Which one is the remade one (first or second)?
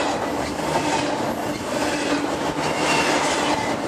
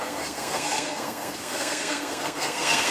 second